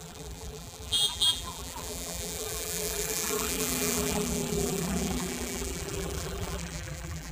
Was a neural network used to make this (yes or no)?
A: yes